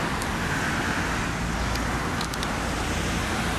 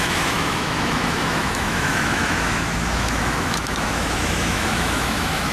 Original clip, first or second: first